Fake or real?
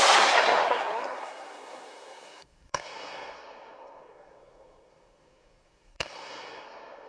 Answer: fake